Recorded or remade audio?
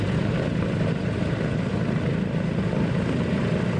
recorded